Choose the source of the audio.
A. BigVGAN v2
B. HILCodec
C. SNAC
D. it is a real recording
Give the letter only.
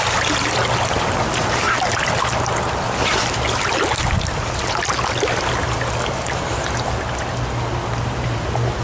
D